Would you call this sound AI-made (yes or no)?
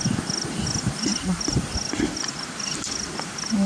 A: no